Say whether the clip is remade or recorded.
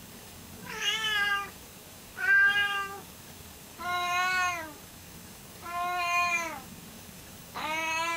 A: remade